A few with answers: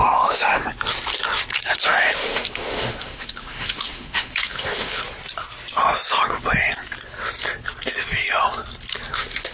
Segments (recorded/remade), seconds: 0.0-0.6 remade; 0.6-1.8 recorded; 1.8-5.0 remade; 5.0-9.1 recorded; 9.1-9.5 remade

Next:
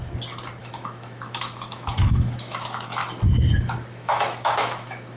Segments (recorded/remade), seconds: 0.0-0.6 recorded; 0.6-3.0 remade; 3.0-3.6 recorded; 3.6-5.2 remade

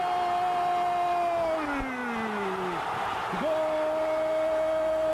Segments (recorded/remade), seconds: 0.0-5.1 recorded

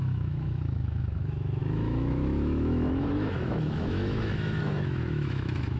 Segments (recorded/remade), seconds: 0.0-5.8 remade

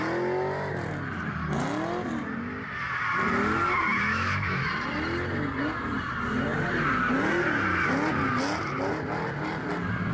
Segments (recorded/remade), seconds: 0.0-3.9 recorded; 3.9-4.7 remade; 4.7-10.1 recorded

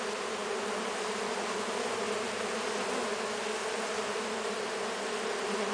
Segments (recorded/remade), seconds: 0.0-5.7 recorded

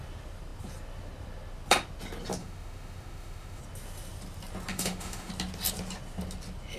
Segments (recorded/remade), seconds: 0.0-2.4 recorded; 2.4-3.6 remade; 3.6-4.7 recorded; 4.7-5.3 remade; 5.3-6.8 recorded

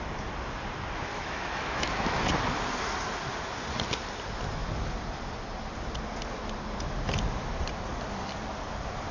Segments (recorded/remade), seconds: 0.0-1.1 recorded; 1.1-2.3 remade; 2.3-9.1 recorded